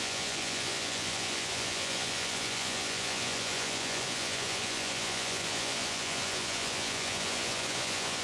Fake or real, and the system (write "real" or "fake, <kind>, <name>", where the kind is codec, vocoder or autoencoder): fake, vocoder, Vocos